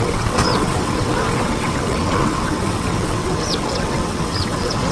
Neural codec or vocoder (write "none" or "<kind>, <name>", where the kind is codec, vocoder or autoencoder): vocoder, WaveNeXt